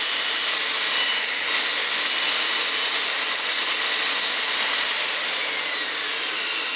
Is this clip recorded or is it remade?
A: recorded